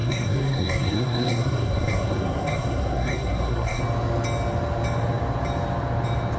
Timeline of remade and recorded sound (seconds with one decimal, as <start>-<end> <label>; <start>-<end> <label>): 0.0-3.8 remade; 3.8-6.4 recorded